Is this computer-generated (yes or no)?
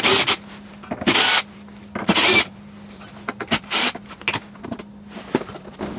no